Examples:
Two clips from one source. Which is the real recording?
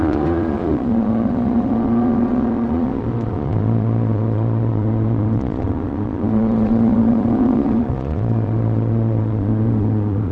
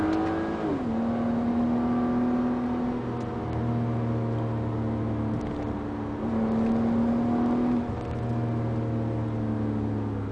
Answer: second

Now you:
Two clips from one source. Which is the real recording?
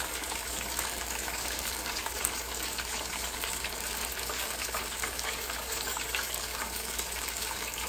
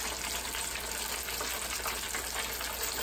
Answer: second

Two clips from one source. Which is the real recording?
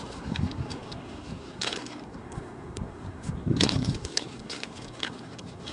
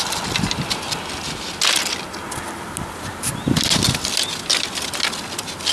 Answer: second